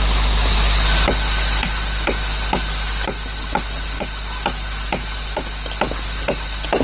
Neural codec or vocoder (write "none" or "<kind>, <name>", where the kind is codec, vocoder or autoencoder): none